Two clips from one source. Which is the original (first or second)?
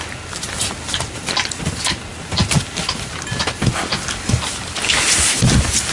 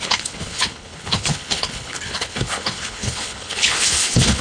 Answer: first